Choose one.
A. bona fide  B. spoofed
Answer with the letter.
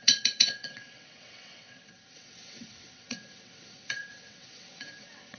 B